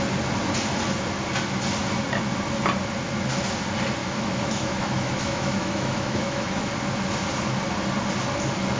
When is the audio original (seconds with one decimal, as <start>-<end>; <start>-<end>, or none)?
0.0-4.0; 6.6-8.8